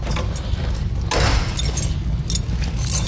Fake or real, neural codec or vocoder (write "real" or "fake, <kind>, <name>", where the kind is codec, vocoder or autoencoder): real